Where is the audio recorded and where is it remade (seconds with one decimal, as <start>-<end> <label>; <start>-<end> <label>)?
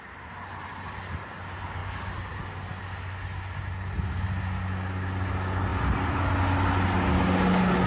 0.0-1.8 recorded; 1.8-2.8 remade; 2.8-5.7 recorded; 5.7-6.2 remade; 6.2-7.9 recorded